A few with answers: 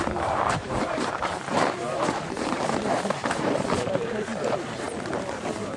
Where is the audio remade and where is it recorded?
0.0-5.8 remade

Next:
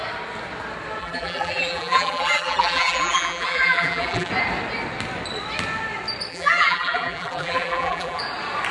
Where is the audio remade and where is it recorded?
0.0-1.0 recorded; 1.0-4.3 remade; 4.3-6.3 recorded; 6.3-8.2 remade; 8.2-8.7 recorded

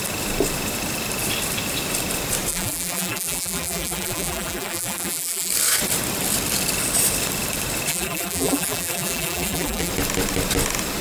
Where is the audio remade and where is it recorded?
0.0-2.5 recorded; 2.5-5.5 remade; 5.5-7.9 recorded; 7.9-9.9 remade; 9.9-11.0 recorded